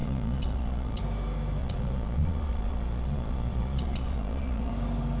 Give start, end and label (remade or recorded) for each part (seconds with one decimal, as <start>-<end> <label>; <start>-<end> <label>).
0.0-1.0 remade; 1.0-1.6 recorded; 1.6-4.7 remade; 4.7-5.2 recorded